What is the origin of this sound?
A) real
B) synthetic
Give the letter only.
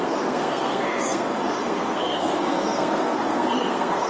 B